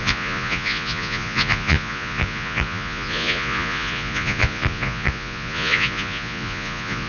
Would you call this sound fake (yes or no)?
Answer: yes